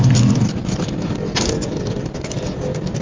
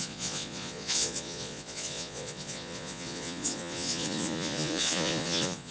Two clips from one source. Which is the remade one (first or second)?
second